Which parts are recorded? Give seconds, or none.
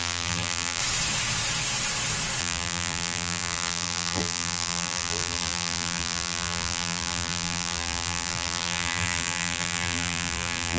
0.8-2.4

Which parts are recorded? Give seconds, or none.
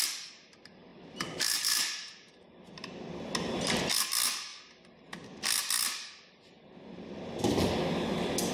0.0-0.9; 2.3-8.5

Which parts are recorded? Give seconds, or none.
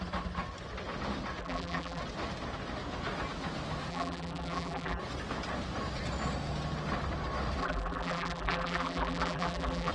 0.0-1.4; 2.0-3.9; 5.0-7.6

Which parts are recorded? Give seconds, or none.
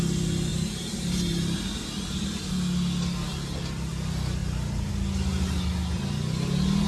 0.0-0.5; 1.8-6.9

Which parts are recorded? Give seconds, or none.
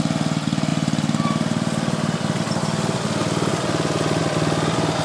0.0-0.7; 2.6-5.0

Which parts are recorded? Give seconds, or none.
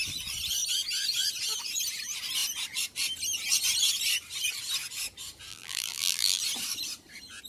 0.0-5.5; 6.4-7.5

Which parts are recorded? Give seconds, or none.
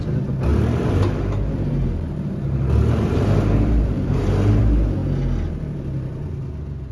0.0-0.5; 4.6-6.9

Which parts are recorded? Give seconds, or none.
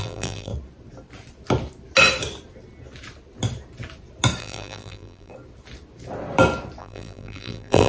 0.5-4.4; 5.3-6.8